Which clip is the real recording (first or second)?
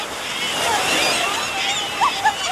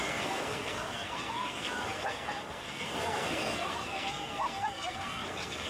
first